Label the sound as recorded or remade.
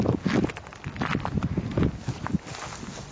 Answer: recorded